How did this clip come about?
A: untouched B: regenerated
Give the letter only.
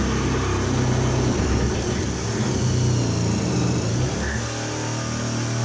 A